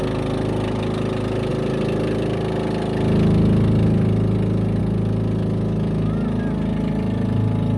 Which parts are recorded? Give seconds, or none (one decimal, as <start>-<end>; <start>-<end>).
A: 0.0-7.8

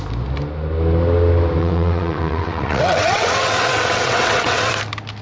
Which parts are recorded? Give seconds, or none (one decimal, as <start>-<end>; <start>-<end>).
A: 0.0-1.6; 4.7-5.2

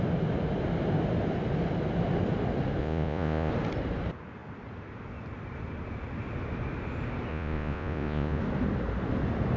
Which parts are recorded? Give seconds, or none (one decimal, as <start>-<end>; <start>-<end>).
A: 0.0-2.8; 3.5-7.3; 8.4-9.6

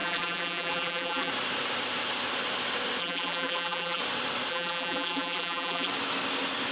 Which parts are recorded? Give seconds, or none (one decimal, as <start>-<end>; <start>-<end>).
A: 1.3-3.0; 4.0-4.5; 5.9-6.7

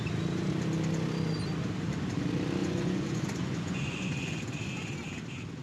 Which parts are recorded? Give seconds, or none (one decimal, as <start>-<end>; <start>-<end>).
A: 0.0-2.6; 4.4-5.6

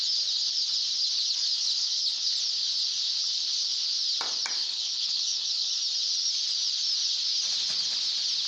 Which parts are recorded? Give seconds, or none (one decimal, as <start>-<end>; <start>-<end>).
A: 0.0-1.5; 2.3-4.6; 5.8-8.5

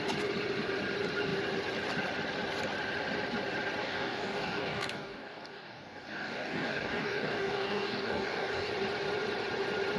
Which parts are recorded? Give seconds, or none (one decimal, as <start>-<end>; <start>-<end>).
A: 0.0-3.8; 8.7-10.0